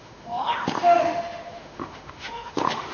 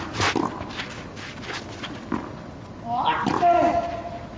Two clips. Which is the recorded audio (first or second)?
second